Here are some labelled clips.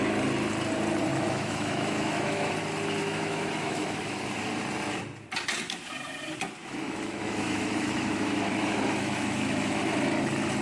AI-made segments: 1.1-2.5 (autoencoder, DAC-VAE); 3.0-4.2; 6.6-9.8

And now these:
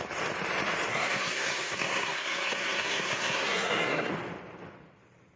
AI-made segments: 0.9-4.1 (codec, SNAC)

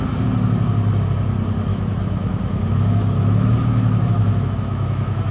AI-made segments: 1.7-5.3 (autoencoder, DAC-VAE)

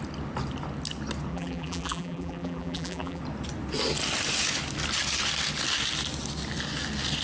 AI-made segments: 1.3-3.2 (vocoder, BigVGAN v2)

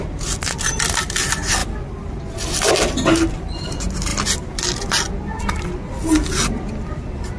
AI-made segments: none

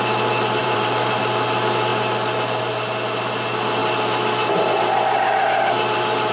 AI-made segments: 0.6-1.2 (vocoder, BigVGAN v2)